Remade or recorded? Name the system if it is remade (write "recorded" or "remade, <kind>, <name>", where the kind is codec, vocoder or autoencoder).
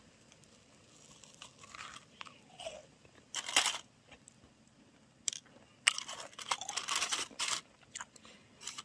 remade, vocoder, BigVGAN v2